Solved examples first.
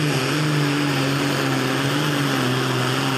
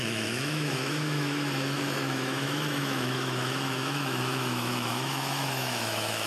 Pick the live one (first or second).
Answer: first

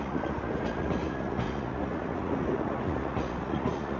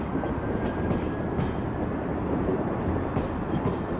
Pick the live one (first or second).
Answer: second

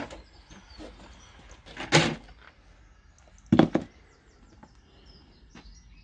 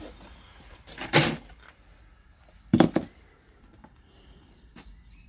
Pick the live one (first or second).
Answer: first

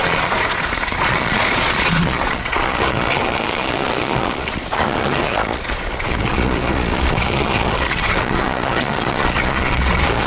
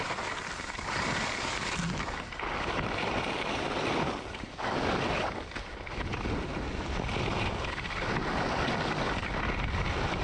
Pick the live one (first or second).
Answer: second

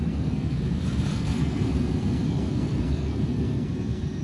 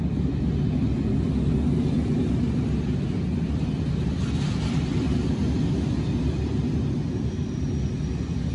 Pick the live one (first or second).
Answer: second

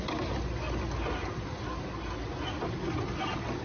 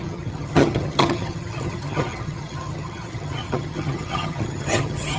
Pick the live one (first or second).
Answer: first